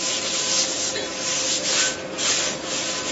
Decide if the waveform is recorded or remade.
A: recorded